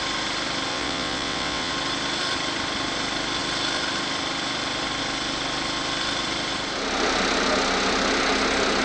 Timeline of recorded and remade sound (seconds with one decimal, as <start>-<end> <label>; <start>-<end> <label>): 0.0-0.7 recorded; 0.7-1.7 remade; 1.7-8.8 recorded